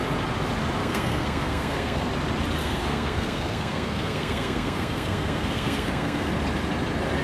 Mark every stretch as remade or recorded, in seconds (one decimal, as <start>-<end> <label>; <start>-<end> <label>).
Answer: 0.0-0.8 recorded; 0.8-2.1 remade; 2.1-2.6 recorded; 2.6-6.3 remade; 6.3-7.2 recorded